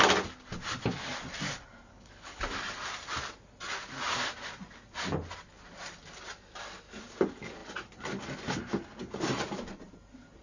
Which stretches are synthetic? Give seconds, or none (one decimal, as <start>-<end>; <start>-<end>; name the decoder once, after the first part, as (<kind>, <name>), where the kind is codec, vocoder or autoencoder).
1.9-2.5 (codec, HILCodec)